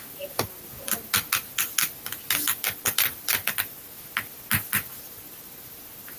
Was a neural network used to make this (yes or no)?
no